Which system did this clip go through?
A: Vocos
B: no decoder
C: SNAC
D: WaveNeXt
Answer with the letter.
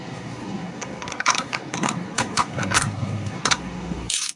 C